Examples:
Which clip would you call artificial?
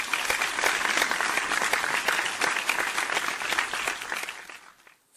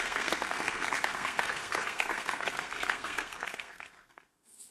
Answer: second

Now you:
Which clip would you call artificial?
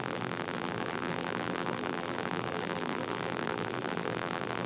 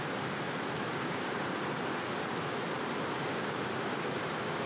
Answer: first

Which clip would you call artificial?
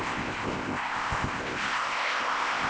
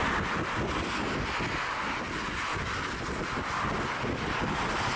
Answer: first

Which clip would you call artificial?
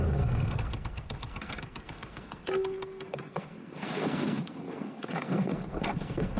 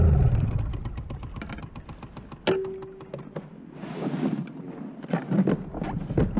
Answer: first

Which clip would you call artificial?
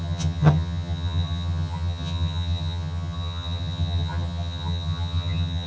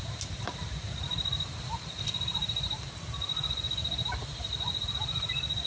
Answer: first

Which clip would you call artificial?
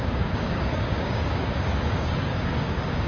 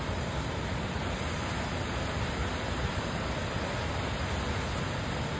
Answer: first